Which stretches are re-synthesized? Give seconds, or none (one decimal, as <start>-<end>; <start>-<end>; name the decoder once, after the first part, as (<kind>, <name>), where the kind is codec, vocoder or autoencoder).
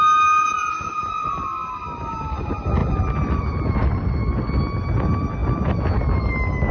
none